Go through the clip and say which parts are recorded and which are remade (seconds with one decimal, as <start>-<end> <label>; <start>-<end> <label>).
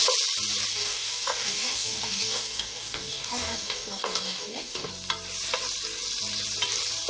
0.0-0.7 recorded; 0.7-4.9 remade; 4.9-7.1 recorded